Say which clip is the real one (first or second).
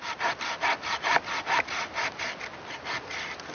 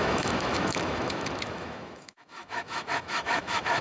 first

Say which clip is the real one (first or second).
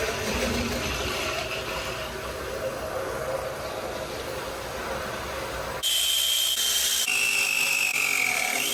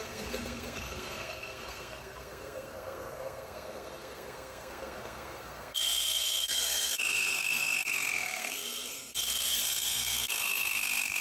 first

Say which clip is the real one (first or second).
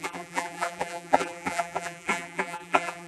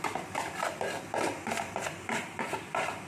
second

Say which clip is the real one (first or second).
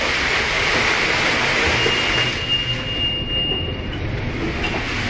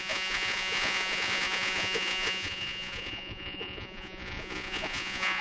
first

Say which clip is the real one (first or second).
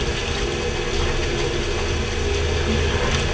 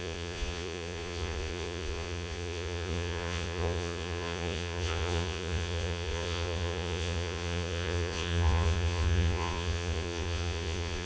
first